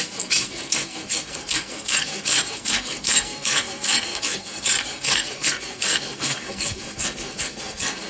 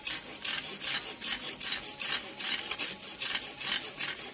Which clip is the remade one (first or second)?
first